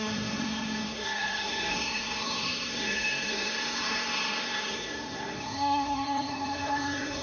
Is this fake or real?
fake